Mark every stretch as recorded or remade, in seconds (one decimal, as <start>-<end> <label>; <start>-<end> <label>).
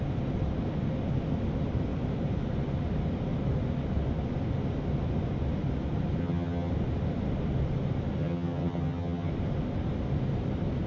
0.0-6.2 recorded; 6.2-6.7 remade; 6.7-8.2 recorded; 8.2-9.3 remade; 9.3-10.9 recorded